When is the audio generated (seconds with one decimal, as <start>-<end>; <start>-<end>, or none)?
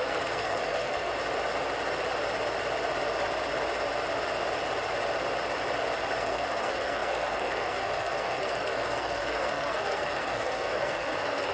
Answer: 0.0-1.1; 6.2-11.5